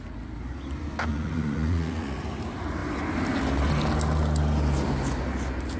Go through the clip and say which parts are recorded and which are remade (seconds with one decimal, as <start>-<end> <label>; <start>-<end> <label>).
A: 0.0-1.1 recorded; 1.1-2.2 remade; 2.2-5.8 recorded